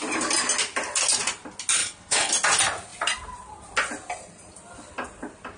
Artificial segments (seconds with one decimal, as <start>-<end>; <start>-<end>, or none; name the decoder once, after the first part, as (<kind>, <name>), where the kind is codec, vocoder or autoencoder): 1.8-2.3 (codec, HILCodec)